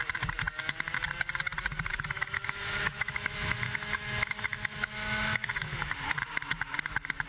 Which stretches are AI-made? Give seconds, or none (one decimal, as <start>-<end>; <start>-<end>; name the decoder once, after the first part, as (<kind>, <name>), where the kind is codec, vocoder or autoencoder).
1.9-5.9 (autoencoder, DAC-VAE)